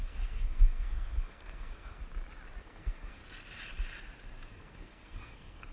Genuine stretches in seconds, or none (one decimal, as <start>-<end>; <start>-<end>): 2.0-2.6; 3.2-4.5